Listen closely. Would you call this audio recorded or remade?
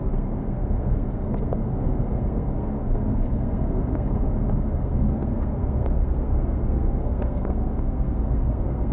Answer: remade